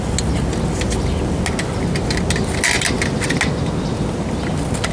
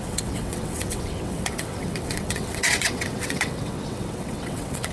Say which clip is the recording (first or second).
first